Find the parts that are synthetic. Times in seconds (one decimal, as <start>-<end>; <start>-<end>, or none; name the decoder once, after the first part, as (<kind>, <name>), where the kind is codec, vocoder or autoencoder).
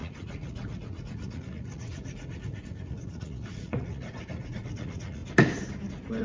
0.0-5.2 (vocoder, Vocos)